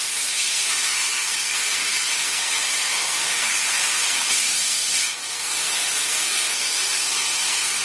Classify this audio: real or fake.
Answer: fake